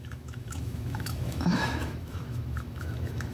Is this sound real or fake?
fake